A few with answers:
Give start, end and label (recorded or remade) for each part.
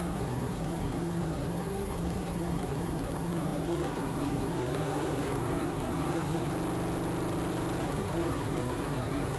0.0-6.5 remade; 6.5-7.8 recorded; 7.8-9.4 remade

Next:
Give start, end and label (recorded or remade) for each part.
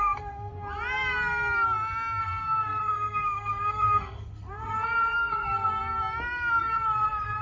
0.0-0.5 remade; 0.5-2.2 recorded; 2.2-5.8 remade; 5.8-6.6 recorded; 6.6-7.4 remade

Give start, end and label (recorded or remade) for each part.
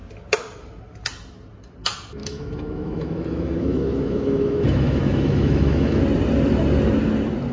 0.0-2.2 recorded; 2.2-6.0 remade; 6.0-7.5 recorded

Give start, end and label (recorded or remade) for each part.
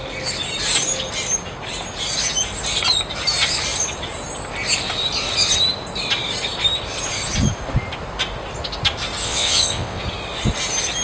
0.0-9.2 recorded; 9.2-10.0 remade; 10.0-11.0 recorded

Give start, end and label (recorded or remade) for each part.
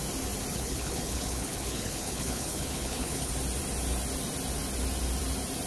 0.0-0.5 recorded; 0.5-3.3 remade; 3.3-5.7 recorded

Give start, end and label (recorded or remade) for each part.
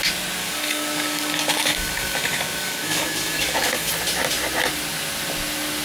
0.0-0.4 recorded; 0.4-3.9 remade; 3.9-5.8 recorded